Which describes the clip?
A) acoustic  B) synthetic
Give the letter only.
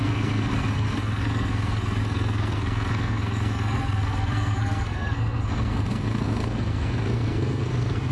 B